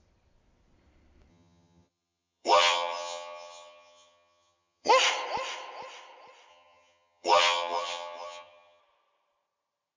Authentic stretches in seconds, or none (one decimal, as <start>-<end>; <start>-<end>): 0.0-1.3; 4.9-6.5; 8.8-10.0